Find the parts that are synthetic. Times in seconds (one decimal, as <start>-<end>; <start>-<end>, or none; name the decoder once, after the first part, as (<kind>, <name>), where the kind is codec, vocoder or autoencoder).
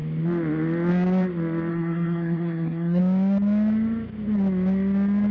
1.7-3.0 (codec, SNAC)